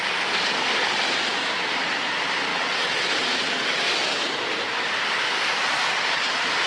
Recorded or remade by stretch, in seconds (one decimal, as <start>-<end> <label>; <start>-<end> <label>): 0.0-2.5 recorded; 2.5-3.0 remade; 3.0-6.7 recorded